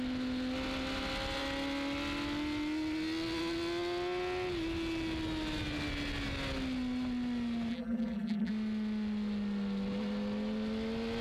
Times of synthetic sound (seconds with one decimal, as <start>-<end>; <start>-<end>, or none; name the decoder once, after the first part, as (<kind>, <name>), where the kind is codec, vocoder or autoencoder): 7.7-8.5 (vocoder, BigVGAN v2)

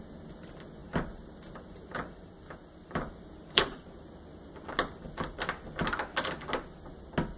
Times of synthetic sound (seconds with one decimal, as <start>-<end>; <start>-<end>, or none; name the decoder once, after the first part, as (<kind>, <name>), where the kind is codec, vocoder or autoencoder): 0.8-2.3 (vocoder, BigVGAN v2); 2.8-3.8

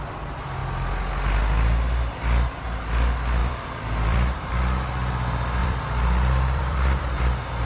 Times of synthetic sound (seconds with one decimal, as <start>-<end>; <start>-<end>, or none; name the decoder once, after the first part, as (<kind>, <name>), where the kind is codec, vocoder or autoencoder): 3.4-4.6 (vocoder, BigVGAN v2); 5.6-7.0

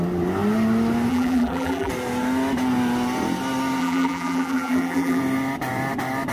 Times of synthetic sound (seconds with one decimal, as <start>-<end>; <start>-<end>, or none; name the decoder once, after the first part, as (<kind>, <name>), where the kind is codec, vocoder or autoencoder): 1.1-1.9 (vocoder, BigVGAN v2); 3.8-5.2